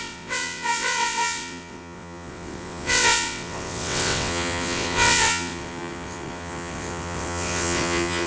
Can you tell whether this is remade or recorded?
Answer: remade